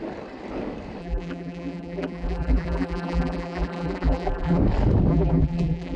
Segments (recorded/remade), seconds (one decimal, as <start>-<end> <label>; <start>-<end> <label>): 0.0-1.0 recorded; 1.0-4.6 remade; 4.6-5.1 recorded; 5.1-6.0 remade